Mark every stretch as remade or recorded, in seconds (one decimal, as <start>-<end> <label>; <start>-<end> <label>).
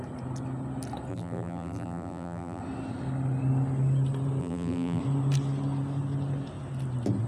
0.0-1.1 recorded; 1.1-2.6 remade; 2.6-4.4 recorded; 4.4-5.0 remade; 5.0-7.3 recorded